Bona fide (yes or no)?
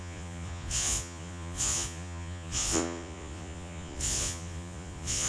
no